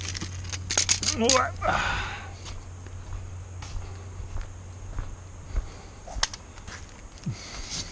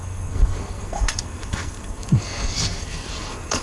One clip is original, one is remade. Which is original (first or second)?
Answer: first